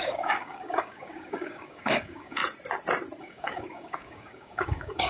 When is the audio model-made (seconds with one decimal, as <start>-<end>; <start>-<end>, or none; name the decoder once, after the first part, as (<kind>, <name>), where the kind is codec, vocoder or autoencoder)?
0.0-2.4 (codec, DAC); 3.2-5.1